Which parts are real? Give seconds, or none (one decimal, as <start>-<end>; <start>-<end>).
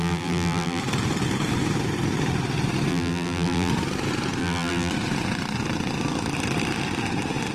0.8-2.9; 3.7-4.4; 4.9-7.5